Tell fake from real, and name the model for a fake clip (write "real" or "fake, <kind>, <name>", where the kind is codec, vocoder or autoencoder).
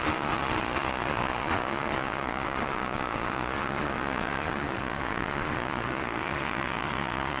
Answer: fake, vocoder, Vocos